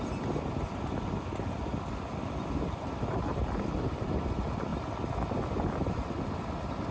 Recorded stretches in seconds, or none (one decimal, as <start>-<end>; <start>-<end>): 0.0-6.9